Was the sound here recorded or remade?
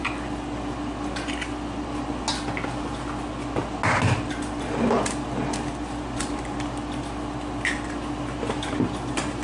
recorded